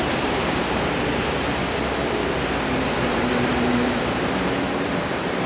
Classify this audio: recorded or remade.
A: remade